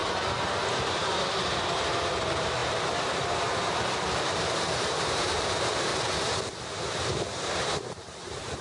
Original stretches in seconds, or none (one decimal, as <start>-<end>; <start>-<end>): 5.9-7.3

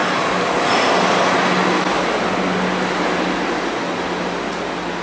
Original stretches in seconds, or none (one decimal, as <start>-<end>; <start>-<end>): 0.0-5.0

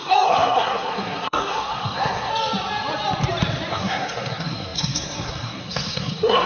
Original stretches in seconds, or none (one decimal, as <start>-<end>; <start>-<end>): 2.3-3.7

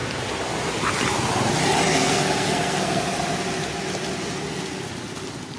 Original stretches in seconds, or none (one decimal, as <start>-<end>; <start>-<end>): 0.0-1.9; 3.0-5.6

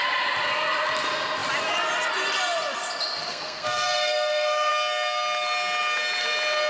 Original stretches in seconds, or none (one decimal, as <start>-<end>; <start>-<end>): 0.0-3.3; 4.7-6.7